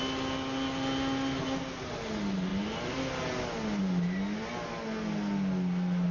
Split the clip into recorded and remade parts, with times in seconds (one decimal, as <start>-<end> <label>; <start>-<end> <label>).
0.0-6.1 recorded